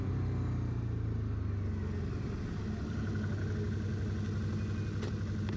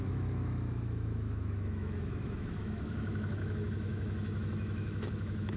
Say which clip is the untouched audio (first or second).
first